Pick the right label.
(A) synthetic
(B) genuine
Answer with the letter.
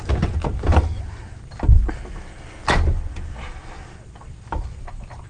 B